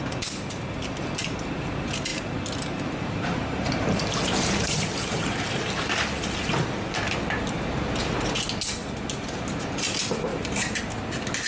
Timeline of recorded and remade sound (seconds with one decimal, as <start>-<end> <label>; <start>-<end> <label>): 0.0-2.1 recorded; 2.1-6.9 remade; 6.9-8.8 recorded; 8.8-9.6 remade; 9.6-10.3 recorded; 10.3-10.8 remade; 10.8-11.5 recorded